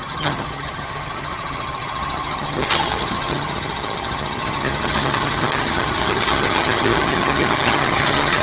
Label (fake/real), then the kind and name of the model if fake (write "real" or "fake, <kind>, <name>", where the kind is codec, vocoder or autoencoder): fake, vocoder, HiFi-GAN